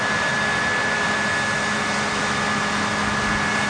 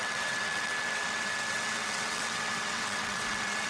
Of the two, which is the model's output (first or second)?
second